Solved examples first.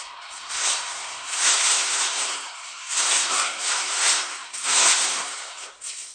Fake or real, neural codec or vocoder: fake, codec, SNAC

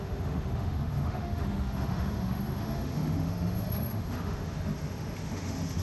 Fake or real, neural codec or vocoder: fake, autoencoder, DAC-VAE